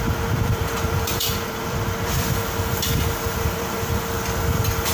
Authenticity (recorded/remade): remade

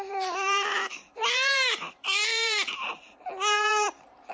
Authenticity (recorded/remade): remade